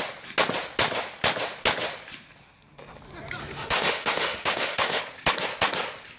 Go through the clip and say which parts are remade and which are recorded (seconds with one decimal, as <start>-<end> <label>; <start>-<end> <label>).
0.0-3.4 recorded; 3.4-5.0 remade; 5.0-6.2 recorded